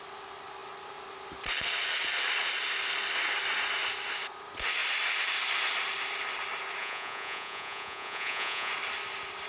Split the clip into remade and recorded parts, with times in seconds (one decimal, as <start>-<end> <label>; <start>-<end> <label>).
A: 0.0-6.8 recorded; 6.8-8.7 remade; 8.7-9.5 recorded